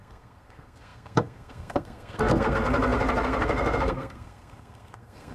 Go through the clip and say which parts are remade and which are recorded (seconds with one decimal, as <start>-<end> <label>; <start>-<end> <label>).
0.0-5.3 remade